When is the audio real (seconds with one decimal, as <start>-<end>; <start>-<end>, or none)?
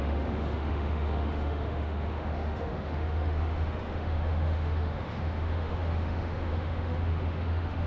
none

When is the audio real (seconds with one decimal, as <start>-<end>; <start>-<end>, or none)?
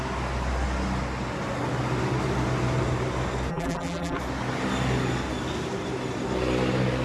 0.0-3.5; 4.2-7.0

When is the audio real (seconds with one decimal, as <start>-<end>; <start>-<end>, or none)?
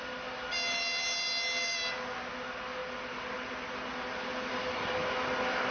0.0-5.7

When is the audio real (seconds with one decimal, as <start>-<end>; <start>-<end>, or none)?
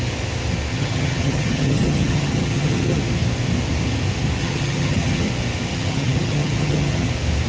0.0-0.7; 3.0-4.4; 5.3-5.7; 7.1-7.5